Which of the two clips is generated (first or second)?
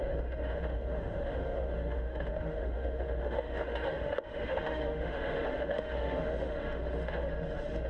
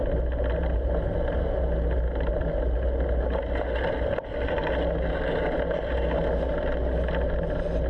first